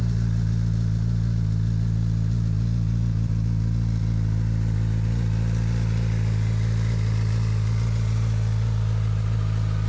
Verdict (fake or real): real